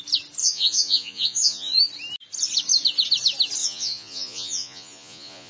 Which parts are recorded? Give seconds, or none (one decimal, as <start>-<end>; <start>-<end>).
0.0-0.4; 1.8-3.6